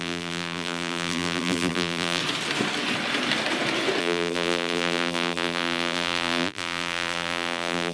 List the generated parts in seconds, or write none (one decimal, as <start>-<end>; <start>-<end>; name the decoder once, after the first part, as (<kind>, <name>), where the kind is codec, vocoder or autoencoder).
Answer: 0.0-2.2 (vocoder, BigVGAN v2); 4.0-7.9